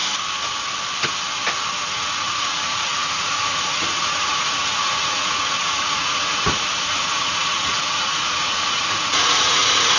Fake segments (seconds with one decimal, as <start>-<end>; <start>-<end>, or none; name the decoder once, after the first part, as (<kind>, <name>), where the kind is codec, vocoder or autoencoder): 1.9-10.0 (vocoder, Vocos)